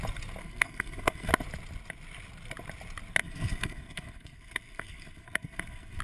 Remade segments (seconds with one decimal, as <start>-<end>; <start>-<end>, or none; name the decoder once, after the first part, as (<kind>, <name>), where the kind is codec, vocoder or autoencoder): 0.4-1.3 (codec, SNAC); 3.2-6.0